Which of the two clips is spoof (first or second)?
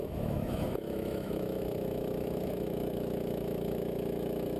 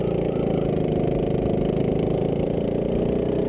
first